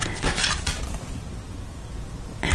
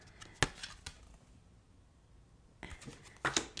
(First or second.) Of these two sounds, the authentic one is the second